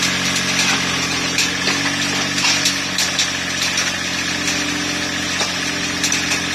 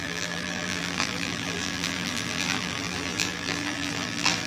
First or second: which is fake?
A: second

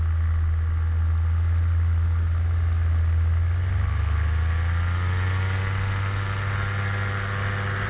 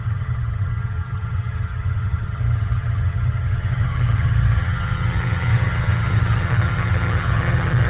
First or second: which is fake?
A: second